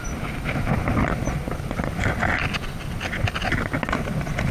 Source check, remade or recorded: recorded